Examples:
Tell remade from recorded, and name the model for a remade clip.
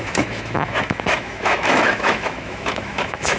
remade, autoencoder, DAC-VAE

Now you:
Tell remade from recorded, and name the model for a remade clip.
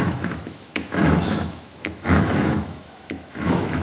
remade, autoencoder, DAC-VAE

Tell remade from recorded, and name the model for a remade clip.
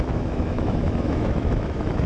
remade, autoencoder, DAC-VAE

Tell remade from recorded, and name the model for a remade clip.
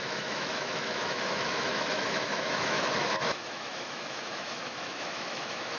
remade, autoencoder, DAC-VAE